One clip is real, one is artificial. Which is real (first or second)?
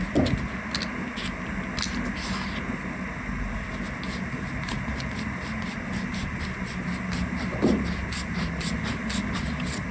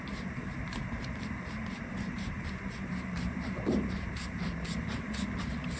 first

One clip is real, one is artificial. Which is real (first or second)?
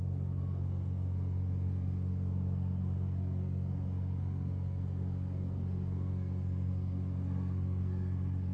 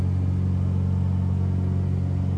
second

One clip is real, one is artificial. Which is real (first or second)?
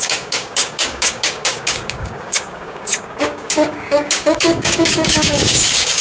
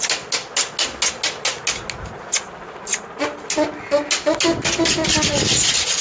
second